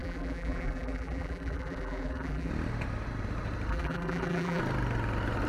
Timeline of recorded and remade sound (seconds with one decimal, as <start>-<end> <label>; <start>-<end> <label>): 0.0-2.5 remade; 2.5-3.7 recorded; 3.7-4.6 remade; 4.6-5.5 recorded